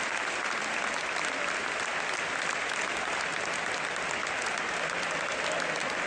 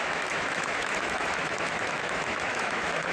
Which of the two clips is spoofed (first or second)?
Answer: second